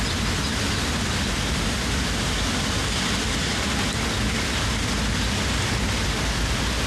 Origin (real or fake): real